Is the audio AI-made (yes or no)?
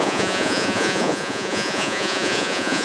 yes